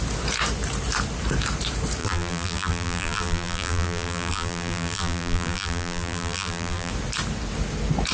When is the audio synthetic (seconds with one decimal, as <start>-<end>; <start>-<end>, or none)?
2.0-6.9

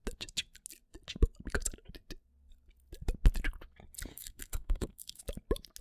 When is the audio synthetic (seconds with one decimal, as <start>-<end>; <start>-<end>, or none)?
4.1-5.2

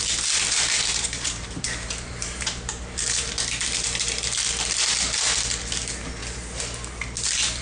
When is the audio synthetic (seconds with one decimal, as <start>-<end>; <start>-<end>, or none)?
0.9-3.3

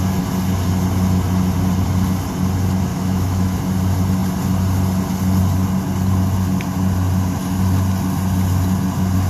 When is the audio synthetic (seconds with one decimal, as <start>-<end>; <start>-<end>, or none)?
2.9-3.6

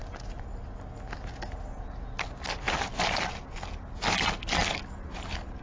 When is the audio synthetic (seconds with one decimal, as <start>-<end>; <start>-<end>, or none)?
none